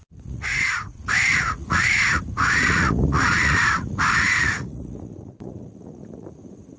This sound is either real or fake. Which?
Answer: fake